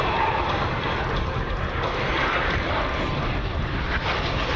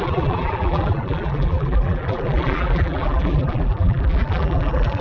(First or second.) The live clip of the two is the first